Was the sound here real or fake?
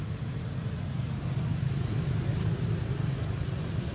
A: real